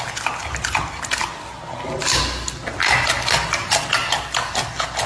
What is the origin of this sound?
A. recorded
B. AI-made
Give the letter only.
A